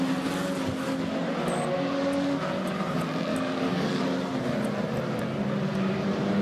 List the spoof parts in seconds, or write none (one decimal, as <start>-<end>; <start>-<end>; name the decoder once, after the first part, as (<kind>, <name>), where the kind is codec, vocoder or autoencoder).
3.3-3.9 (codec, DAC)